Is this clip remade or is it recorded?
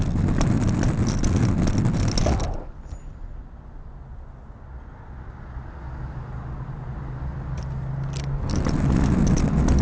recorded